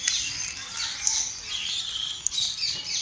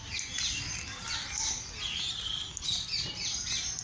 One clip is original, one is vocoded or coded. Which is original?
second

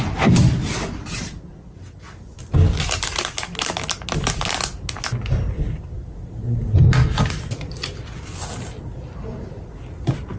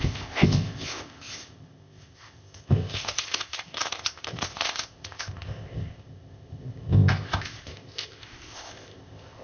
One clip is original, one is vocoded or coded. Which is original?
first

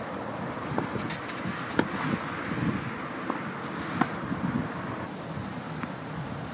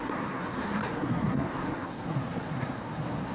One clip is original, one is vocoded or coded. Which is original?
first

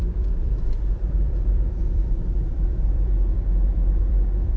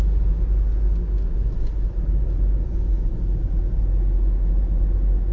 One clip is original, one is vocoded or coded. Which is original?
second